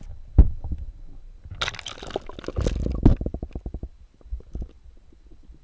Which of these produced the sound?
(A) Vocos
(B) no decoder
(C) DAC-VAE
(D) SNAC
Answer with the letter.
B